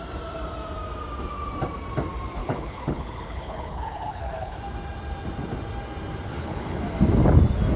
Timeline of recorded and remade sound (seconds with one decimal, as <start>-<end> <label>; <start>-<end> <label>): 0.0-2.4 recorded; 2.4-4.6 remade; 4.6-6.3 recorded; 6.3-6.8 remade; 6.8-7.8 recorded